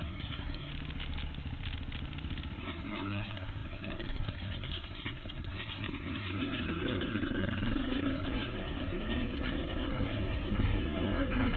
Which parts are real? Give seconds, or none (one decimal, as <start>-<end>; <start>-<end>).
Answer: 0.7-2.6